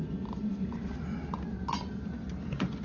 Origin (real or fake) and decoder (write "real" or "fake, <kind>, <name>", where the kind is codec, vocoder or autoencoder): real